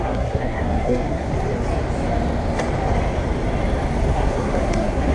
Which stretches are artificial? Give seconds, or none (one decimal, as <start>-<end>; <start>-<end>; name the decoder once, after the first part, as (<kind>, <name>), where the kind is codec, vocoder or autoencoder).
0.0-1.3 (codec, SNAC); 4.1-5.1